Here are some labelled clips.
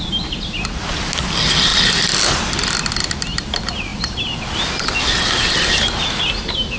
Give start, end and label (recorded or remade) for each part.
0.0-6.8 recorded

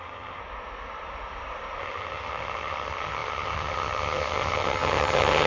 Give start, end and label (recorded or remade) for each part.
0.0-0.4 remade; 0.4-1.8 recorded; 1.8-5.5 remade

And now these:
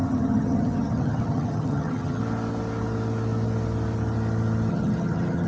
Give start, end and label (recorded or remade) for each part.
0.0-2.2 remade; 2.2-4.7 recorded; 4.7-5.5 remade

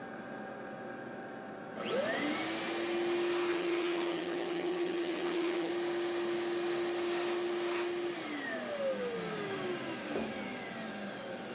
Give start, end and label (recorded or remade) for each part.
0.0-3.5 recorded; 3.5-5.7 remade; 5.7-11.5 recorded

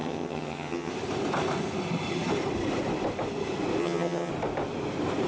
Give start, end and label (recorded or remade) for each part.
0.0-0.9 remade; 0.9-3.8 recorded; 3.8-4.3 remade; 4.3-5.3 recorded

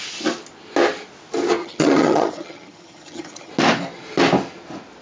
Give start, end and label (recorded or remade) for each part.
0.0-1.6 recorded; 1.6-3.5 remade; 3.5-5.0 recorded

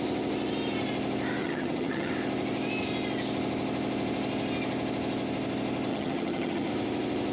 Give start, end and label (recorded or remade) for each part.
0.0-1.4 recorded; 1.4-2.1 remade; 2.1-5.9 recorded; 5.9-6.7 remade; 6.7-7.3 recorded

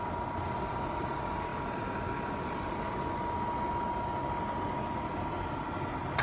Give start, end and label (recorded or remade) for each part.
0.0-6.2 recorded